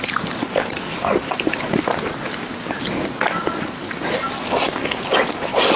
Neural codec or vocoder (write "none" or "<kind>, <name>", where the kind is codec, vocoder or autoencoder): none